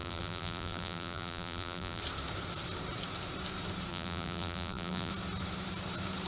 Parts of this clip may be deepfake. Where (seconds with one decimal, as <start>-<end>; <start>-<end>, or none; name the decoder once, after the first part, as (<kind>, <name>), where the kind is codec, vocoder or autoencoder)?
0.0-2.0 (vocoder, BigVGAN v2); 3.9-5.1